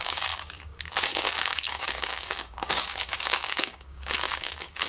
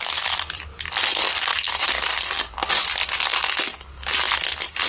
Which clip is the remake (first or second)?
first